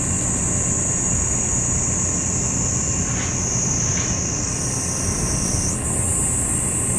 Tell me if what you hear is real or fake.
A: real